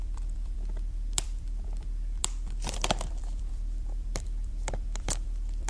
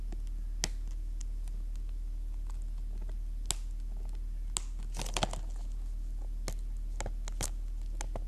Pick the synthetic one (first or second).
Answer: first